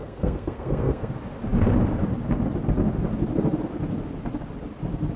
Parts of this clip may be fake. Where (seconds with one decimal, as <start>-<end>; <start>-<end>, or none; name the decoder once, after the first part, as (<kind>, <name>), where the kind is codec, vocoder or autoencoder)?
0.0-1.1 (codec, SNAC)